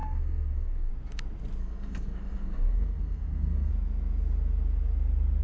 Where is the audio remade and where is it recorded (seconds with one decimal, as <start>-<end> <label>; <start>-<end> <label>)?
0.0-0.9 remade; 0.9-1.6 recorded; 1.6-3.7 remade; 3.7-5.4 recorded